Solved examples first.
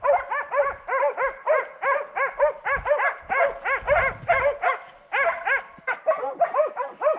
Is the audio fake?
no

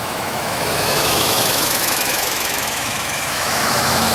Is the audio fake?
yes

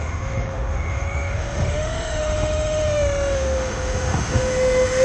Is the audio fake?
yes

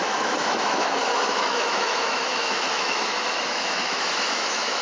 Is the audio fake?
yes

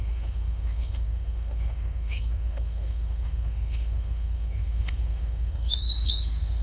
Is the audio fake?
yes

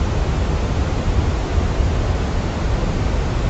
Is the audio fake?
no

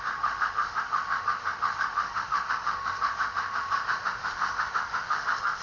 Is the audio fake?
yes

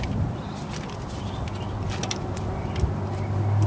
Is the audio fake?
no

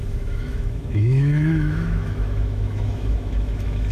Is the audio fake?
yes